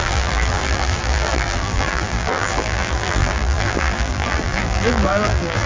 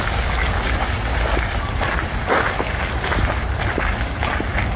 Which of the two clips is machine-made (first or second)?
first